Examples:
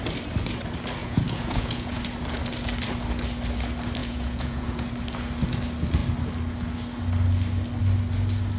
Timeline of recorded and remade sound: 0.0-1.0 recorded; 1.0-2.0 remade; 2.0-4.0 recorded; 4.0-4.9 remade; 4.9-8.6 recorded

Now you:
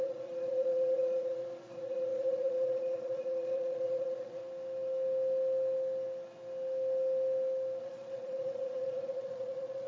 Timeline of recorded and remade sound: 0.0-4.4 remade; 4.4-7.8 recorded; 7.8-9.9 remade

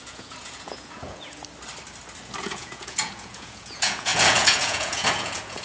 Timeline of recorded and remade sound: 0.0-1.4 remade; 1.4-2.4 recorded; 2.4-5.6 remade

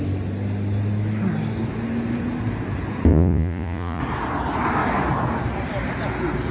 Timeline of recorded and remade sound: 0.0-3.1 recorded; 3.1-4.0 remade; 4.0-6.5 recorded

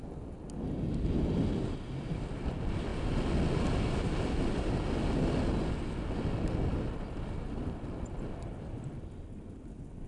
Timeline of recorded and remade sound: 0.0-10.1 recorded

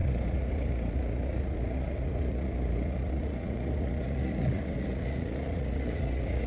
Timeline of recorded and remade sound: 0.0-6.5 remade

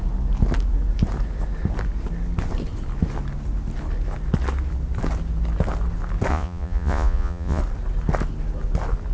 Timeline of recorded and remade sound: 0.0-6.3 recorded; 6.3-7.6 remade; 7.6-9.1 recorded

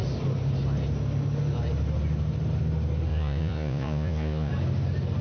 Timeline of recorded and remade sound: 0.0-3.1 recorded; 3.1-4.5 remade; 4.5-5.2 recorded